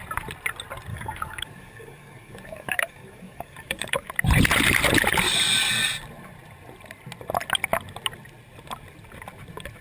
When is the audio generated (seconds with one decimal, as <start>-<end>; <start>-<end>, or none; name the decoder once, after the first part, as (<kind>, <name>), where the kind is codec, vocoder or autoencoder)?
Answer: 0.9-4.1 (codec, DAC)